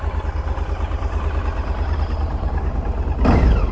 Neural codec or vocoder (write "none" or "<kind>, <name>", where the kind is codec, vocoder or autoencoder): none